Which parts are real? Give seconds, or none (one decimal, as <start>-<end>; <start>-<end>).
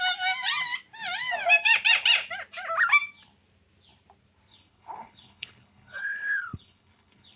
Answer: 0.0-4.5